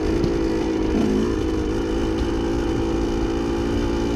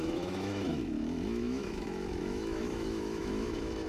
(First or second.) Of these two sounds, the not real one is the second